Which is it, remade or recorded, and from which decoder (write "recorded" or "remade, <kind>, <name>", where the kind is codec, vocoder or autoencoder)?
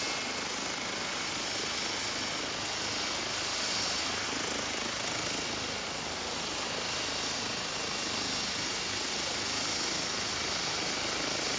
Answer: recorded